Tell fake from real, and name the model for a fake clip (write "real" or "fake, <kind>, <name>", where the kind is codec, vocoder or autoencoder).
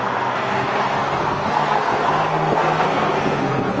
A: fake, codec, SNAC